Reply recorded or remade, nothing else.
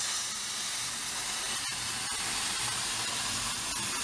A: recorded